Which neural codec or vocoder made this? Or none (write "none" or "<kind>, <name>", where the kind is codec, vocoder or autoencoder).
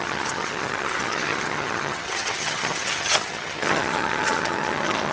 vocoder, HiFi-GAN